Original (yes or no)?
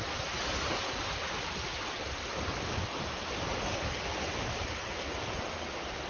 yes